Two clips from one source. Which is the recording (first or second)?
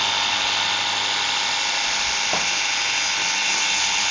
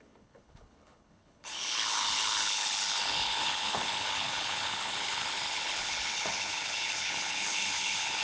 first